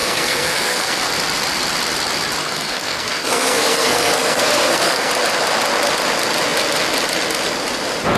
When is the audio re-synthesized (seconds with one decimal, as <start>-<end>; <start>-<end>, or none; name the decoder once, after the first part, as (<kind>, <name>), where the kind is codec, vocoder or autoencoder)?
0.0-1.1 (codec, SNAC); 2.4-5.1